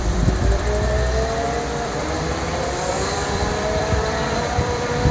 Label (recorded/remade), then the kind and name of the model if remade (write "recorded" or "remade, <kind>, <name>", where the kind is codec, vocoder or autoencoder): remade, vocoder, BigVGAN v2